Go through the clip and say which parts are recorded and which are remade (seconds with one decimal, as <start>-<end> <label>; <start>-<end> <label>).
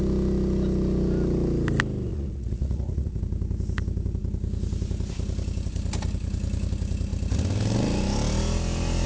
0.0-2.1 recorded; 2.1-3.2 remade; 3.2-9.1 recorded